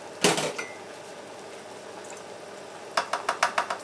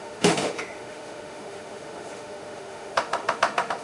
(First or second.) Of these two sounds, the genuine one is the first